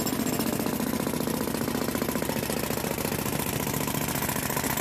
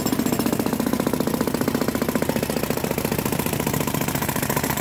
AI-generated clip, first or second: second